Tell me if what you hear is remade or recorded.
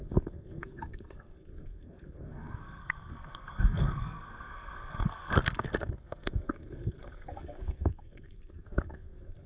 remade